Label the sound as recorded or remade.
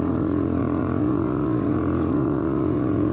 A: remade